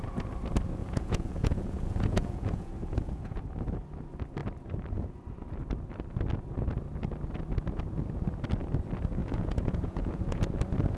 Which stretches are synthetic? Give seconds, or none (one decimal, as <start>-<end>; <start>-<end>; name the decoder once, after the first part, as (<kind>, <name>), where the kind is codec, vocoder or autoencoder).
0.8-3.4 (vocoder, Vocos); 9.2-10.5